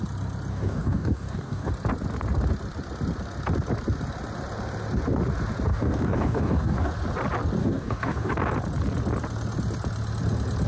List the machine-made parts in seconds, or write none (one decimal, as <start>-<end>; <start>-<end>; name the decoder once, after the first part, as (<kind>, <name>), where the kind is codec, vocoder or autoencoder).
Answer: 0.5-1.7 (codec, DAC); 5.7-6.9; 7.6-8.3